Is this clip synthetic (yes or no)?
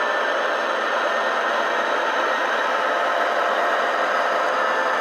no